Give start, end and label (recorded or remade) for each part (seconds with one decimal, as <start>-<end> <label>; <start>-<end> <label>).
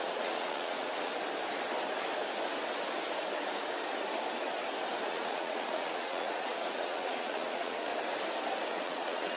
0.0-1.1 remade; 1.1-5.1 recorded; 5.1-7.9 remade; 7.9-8.7 recorded; 8.7-9.4 remade